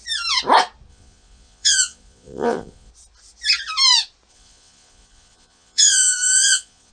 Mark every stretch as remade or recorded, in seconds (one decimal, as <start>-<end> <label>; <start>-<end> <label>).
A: 0.0-0.9 recorded; 0.9-2.9 remade; 2.9-4.3 recorded; 4.3-6.9 remade